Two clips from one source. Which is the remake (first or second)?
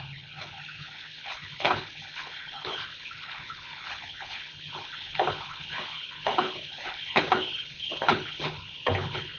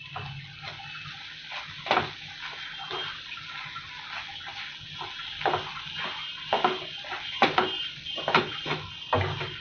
first